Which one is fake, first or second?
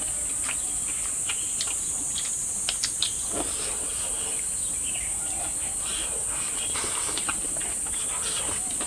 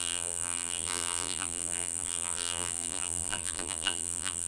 second